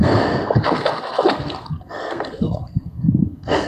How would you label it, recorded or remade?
remade